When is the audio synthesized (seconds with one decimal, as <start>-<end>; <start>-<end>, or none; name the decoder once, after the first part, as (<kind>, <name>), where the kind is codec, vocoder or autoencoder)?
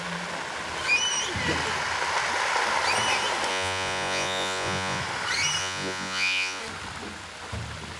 3.5-5.0 (vocoder, Vocos); 5.6-6.6